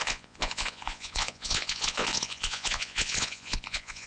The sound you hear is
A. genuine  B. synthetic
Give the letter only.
B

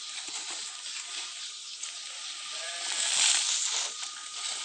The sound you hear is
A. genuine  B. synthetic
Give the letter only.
A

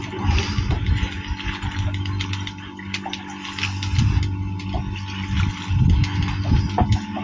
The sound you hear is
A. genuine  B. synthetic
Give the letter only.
A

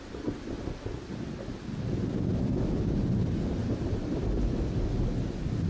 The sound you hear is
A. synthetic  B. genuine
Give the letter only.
B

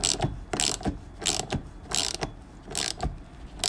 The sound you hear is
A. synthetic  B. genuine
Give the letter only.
B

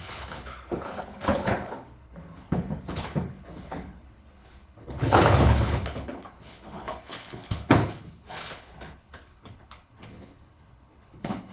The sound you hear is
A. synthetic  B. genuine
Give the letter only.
A